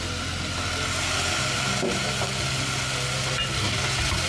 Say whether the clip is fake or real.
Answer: real